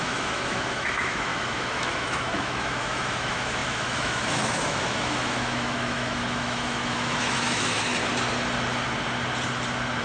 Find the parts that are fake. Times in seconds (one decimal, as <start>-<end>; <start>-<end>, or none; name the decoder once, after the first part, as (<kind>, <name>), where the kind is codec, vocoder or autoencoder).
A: 0.0-7.9 (autoencoder, DAC-VAE)